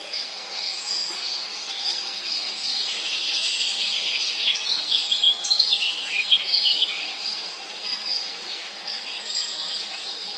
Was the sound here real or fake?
fake